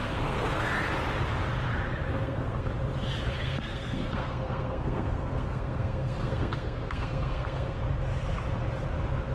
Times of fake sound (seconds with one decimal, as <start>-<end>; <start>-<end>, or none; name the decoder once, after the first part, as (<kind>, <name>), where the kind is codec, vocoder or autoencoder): 0.0-0.7 (codec, SNAC); 2.1-2.7; 3.3-7.8